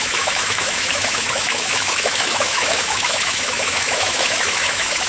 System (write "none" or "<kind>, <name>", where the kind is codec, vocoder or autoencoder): autoencoder, DAC-VAE